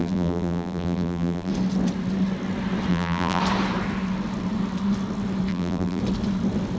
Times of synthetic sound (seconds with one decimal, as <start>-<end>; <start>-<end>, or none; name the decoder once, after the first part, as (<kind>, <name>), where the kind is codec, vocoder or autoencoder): 0.0-1.5 (vocoder, BigVGAN v2); 2.9-3.4; 5.5-6.0